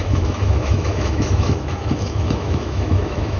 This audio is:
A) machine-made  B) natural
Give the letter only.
A